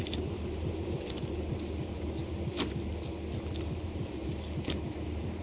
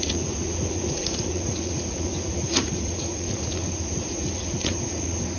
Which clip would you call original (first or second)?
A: first